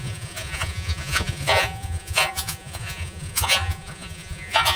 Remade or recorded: remade